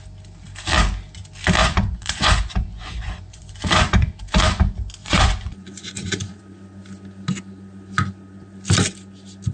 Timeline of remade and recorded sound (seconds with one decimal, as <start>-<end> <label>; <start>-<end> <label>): 0.0-1.6 recorded; 1.6-4.1 remade; 4.1-5.0 recorded; 5.0-6.4 remade; 6.4-9.5 recorded